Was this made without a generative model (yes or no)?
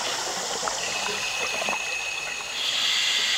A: yes